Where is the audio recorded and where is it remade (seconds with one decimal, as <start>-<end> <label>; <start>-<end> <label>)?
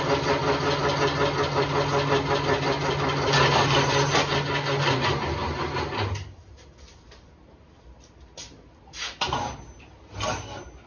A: 0.0-10.9 recorded